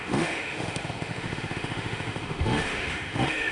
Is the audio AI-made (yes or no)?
yes